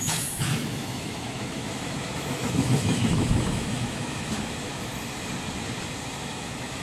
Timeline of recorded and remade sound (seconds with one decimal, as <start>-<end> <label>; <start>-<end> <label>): 0.0-4.9 remade; 4.9-6.3 recorded; 6.3-6.8 remade